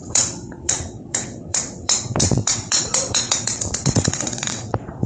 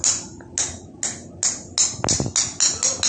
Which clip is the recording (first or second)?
second